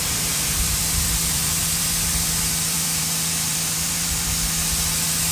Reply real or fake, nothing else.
fake